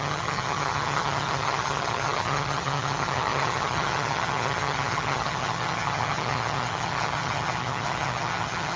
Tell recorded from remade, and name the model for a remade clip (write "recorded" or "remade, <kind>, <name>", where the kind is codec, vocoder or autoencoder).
remade, vocoder, HiFi-GAN